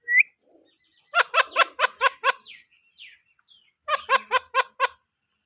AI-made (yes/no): no